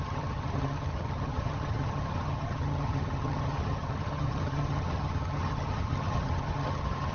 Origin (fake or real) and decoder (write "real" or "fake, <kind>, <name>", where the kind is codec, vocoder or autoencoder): fake, vocoder, HiFi-GAN